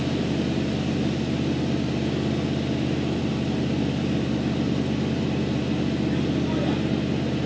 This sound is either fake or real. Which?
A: real